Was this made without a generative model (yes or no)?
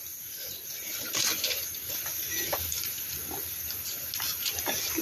yes